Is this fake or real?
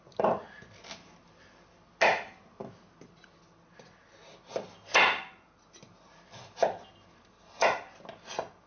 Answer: real